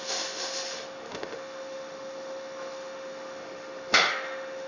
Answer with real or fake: fake